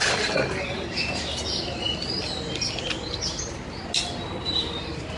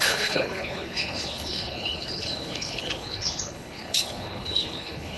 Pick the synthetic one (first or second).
second